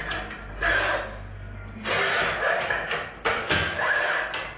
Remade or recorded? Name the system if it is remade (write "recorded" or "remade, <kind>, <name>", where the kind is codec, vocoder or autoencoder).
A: recorded